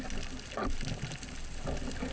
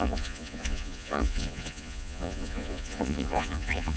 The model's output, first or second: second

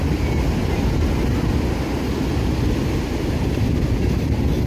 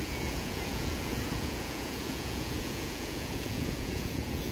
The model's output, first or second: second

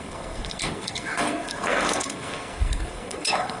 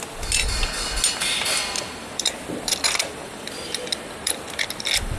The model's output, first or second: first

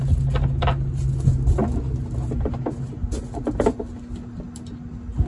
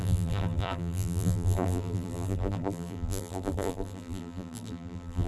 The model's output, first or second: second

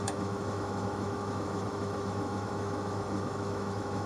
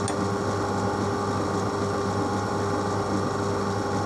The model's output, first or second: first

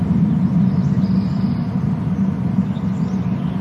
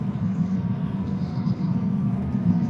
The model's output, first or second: second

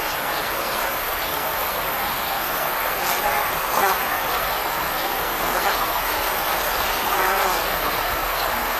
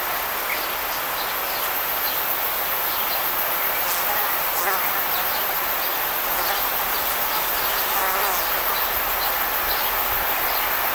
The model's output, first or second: first